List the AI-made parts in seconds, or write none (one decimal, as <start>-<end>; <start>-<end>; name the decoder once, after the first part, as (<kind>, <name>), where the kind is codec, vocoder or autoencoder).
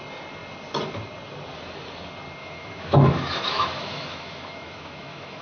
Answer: 2.4-5.4 (autoencoder, DAC-VAE)